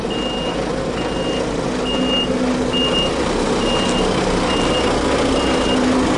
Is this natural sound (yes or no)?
yes